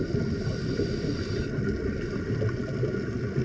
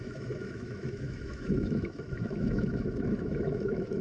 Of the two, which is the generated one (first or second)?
second